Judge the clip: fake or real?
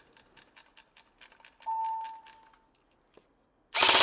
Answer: real